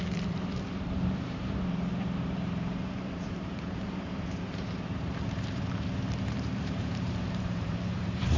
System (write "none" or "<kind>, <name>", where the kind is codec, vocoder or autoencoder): vocoder, BigVGAN v2